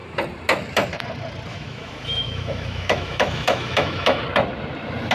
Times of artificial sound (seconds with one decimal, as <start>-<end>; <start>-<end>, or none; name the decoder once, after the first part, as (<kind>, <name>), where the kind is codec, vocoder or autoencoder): 1.5-4.2 (autoencoder, DAC-VAE)